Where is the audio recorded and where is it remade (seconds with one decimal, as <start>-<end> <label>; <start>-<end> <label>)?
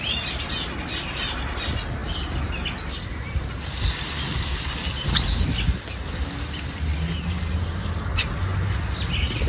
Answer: 0.0-9.5 recorded